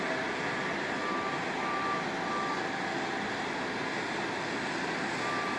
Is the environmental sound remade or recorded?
recorded